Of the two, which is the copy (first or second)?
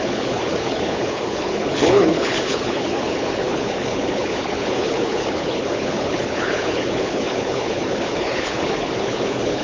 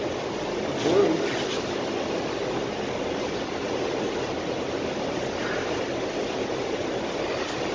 first